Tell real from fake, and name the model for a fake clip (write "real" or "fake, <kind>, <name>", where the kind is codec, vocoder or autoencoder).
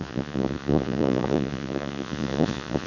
fake, vocoder, Vocos